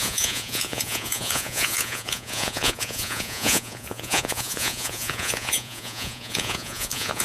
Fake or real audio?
fake